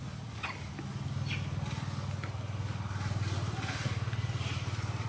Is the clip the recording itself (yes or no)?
yes